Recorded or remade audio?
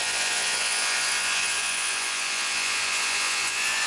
remade